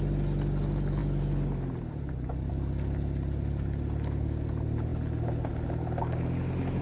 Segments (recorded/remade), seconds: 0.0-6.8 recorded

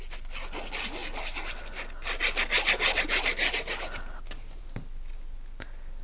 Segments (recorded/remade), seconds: 0.0-6.0 recorded

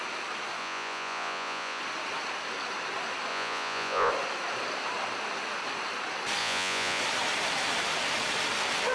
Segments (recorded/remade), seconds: 0.0-0.6 recorded; 0.6-1.8 remade; 1.8-3.3 recorded; 3.3-4.1 remade; 4.1-6.4 recorded; 6.4-7.0 remade; 7.0-8.9 recorded

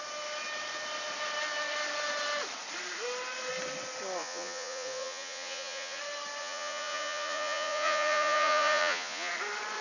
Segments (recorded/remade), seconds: 0.0-4.2 recorded; 4.2-6.0 remade; 6.0-6.4 recorded; 6.4-9.3 remade; 9.3-9.8 recorded

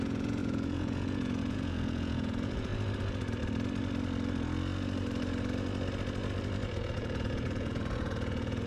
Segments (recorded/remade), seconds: 0.0-2.7 remade; 2.7-6.8 recorded; 6.8-8.7 remade

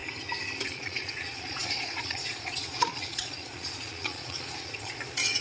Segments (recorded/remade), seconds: 0.0-0.6 recorded; 0.6-5.4 remade

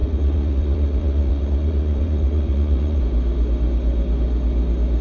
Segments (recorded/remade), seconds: 0.0-3.0 remade; 3.0-5.0 recorded

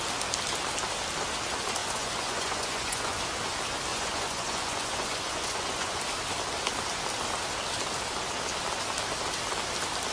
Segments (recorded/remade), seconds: 0.0-1.8 recorded; 1.8-3.2 remade; 3.2-3.9 recorded; 3.9-6.0 remade; 6.0-10.1 recorded